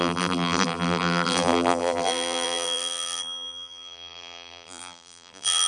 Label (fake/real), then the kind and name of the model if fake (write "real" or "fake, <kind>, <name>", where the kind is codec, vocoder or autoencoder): fake, vocoder, BigVGAN v2